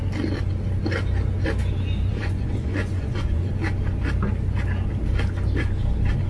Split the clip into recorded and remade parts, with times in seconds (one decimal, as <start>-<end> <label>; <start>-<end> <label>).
0.0-2.1 recorded; 2.1-3.5 remade; 3.5-6.3 recorded

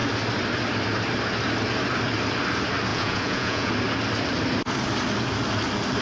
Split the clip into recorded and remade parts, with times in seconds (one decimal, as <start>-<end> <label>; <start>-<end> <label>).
0.0-2.9 recorded; 2.9-3.7 remade; 3.7-6.0 recorded

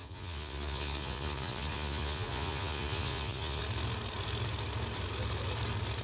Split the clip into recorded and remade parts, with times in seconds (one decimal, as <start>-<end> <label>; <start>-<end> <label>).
0.0-3.6 remade; 3.6-6.0 recorded

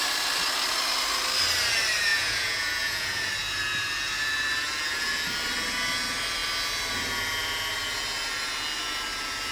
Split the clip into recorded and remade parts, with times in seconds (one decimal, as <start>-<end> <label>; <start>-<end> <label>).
0.0-2.1 recorded; 2.1-3.2 remade; 3.2-9.5 recorded

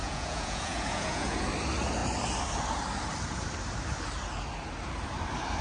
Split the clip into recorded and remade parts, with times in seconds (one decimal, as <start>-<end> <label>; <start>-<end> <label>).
0.0-1.5 remade; 1.5-5.6 recorded

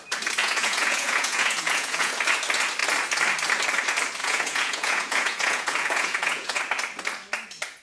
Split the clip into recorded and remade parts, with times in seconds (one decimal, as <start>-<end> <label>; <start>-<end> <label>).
0.0-0.4 recorded; 0.4-2.1 remade; 2.1-4.2 recorded; 4.2-6.6 remade; 6.6-7.8 recorded

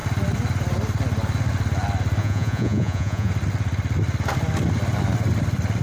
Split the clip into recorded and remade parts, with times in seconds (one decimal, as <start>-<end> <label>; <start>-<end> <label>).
0.0-2.2 recorded; 2.2-3.3 remade; 3.3-5.8 recorded